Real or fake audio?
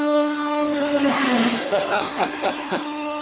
fake